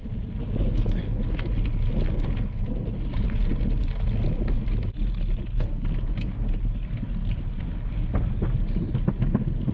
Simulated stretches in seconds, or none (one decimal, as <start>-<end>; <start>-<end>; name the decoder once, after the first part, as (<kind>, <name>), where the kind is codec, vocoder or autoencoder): none